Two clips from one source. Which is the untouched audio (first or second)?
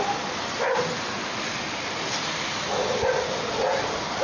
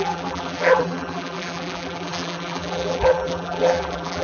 first